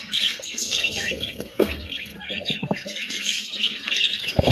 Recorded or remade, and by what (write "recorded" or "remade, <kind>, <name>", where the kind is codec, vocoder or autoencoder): remade, codec, SNAC